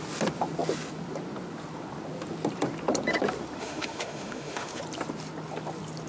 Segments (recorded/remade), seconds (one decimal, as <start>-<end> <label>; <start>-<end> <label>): 0.0-3.6 recorded; 3.6-4.8 remade; 4.8-6.1 recorded